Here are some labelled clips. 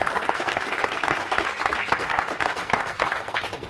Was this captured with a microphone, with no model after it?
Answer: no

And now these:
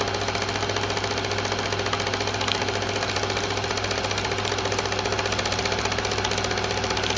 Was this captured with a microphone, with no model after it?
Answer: yes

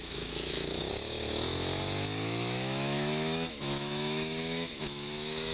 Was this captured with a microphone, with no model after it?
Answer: no